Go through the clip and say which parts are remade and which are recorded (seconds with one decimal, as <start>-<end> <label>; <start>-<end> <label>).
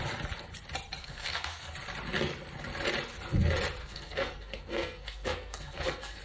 0.0-1.0 recorded; 1.0-1.7 remade; 1.7-3.8 recorded; 3.8-6.2 remade